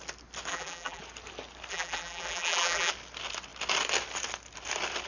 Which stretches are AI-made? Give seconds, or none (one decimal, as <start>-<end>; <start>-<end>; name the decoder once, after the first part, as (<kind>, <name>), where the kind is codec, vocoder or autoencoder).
0.5-1.0 (vocoder, BigVGAN v2); 1.7-2.9